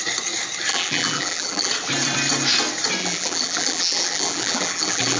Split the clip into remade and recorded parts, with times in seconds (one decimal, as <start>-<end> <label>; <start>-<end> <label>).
0.0-0.7 recorded; 0.7-1.7 remade; 1.7-3.0 recorded; 3.0-5.2 remade